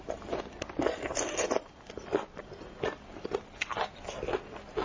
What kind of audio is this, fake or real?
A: real